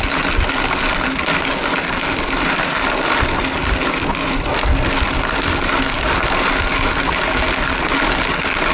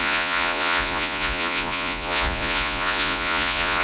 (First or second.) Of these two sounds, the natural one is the first